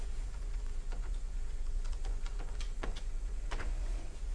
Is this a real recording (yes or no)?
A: no